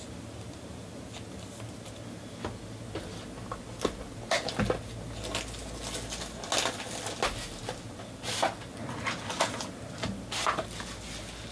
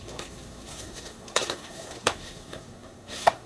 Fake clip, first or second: second